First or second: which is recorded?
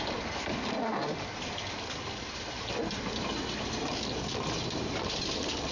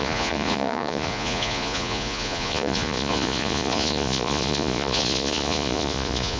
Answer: first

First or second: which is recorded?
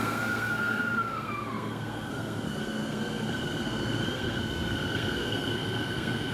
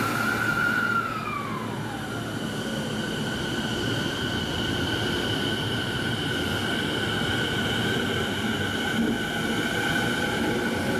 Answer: second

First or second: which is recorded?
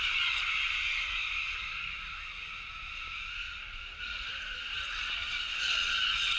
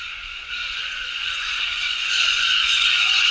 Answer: first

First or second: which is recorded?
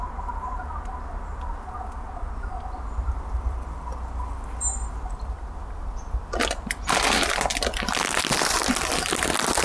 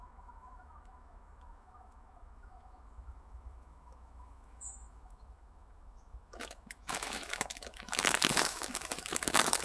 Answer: first